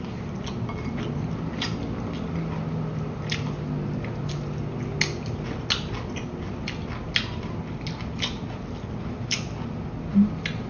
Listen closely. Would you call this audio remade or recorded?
recorded